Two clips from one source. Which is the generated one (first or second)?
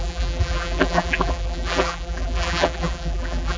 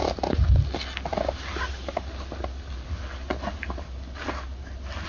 first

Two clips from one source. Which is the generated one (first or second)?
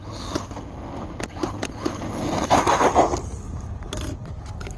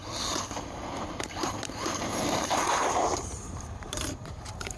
second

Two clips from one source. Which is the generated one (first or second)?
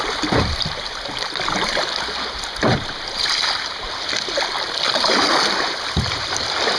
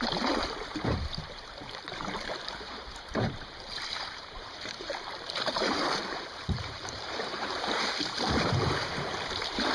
second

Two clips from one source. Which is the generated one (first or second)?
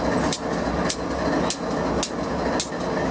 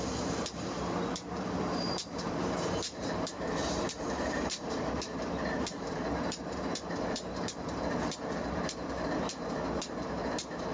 second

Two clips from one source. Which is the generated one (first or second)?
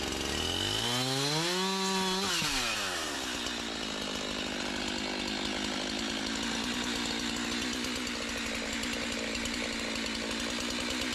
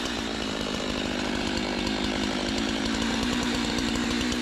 second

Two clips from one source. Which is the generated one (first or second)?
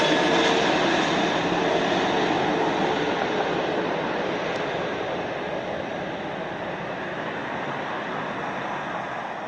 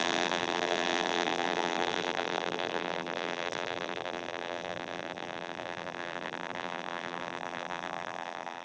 second